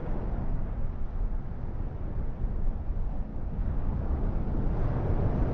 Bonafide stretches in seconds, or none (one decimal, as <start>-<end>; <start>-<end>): 1.4-3.3; 4.6-5.5